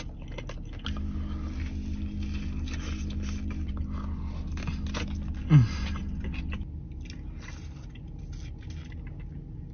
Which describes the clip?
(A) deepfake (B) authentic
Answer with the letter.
B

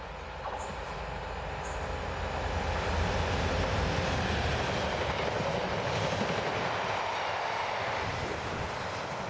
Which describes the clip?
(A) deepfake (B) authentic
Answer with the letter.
B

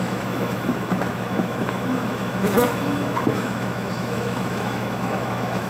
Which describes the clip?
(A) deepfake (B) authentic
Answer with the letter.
A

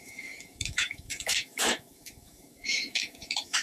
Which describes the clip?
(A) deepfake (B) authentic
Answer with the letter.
A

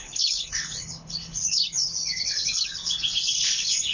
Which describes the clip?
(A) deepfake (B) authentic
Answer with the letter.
A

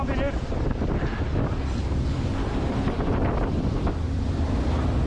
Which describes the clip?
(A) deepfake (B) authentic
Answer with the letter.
B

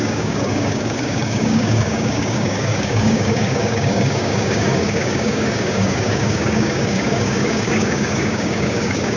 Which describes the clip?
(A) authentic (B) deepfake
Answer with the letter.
B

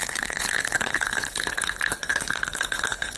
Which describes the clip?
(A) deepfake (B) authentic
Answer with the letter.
A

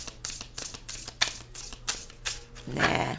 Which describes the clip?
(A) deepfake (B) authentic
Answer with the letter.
B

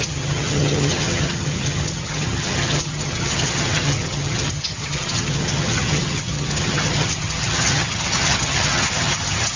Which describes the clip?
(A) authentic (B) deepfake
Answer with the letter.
B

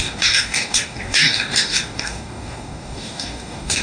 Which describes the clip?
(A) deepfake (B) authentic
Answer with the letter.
A